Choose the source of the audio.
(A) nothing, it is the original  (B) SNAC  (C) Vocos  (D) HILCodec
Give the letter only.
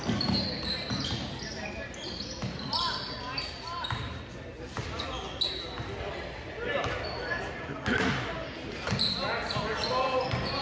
A